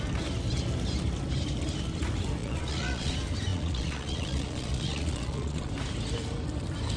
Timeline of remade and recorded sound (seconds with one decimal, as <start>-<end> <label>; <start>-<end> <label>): 0.0-2.4 recorded; 2.4-3.1 remade; 3.1-3.5 recorded; 3.5-5.7 remade; 5.7-7.0 recorded